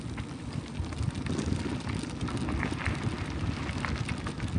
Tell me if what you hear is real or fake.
real